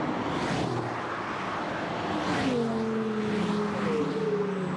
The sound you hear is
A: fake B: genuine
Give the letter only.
B